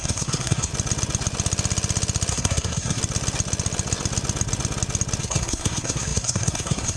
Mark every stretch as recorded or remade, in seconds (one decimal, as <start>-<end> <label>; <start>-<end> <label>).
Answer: 0.0-0.7 remade; 0.7-2.3 recorded; 2.3-3.0 remade; 3.0-5.2 recorded; 5.2-7.0 remade